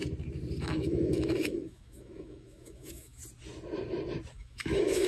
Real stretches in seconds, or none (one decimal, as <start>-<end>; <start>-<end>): 0.0-0.6; 3.2-4.3